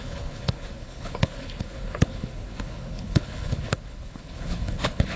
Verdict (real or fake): fake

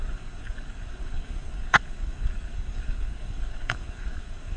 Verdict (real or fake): fake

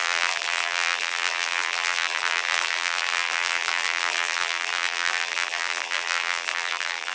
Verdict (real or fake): fake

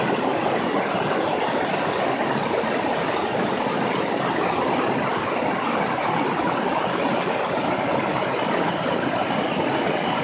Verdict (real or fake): real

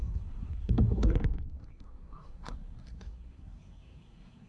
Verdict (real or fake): fake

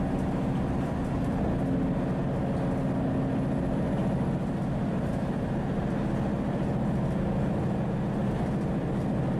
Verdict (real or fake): real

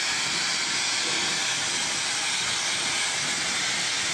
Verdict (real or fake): real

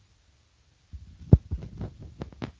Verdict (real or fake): real